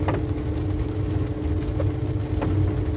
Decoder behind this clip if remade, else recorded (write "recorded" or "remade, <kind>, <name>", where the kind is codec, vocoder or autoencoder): recorded